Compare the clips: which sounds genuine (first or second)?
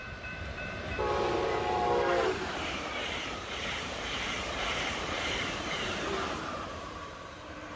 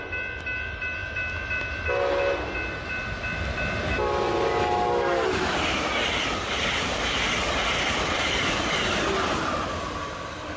second